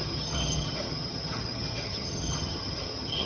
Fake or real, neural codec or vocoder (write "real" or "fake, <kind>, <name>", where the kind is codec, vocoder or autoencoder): fake, vocoder, HiFi-GAN